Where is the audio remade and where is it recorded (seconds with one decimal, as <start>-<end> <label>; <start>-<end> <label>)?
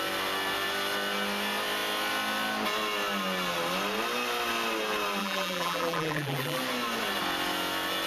0.0-5.2 recorded; 5.2-6.6 remade; 6.6-8.1 recorded